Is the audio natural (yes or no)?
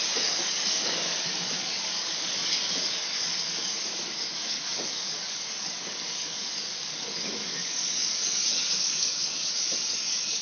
no